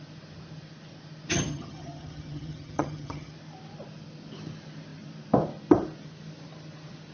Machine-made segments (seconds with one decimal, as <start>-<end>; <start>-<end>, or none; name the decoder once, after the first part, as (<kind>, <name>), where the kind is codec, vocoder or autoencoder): 1.3-3.3 (vocoder, HiFi-GAN)